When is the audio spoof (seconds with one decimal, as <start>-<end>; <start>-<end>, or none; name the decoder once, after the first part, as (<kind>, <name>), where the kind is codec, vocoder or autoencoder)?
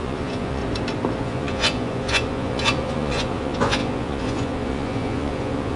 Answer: 0.0-0.6 (vocoder, Vocos); 1.2-5.8